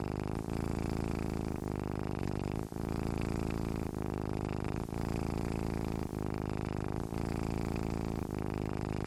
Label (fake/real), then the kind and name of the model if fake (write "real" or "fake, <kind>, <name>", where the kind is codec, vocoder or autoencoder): real